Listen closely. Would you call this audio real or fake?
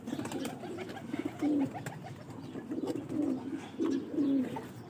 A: real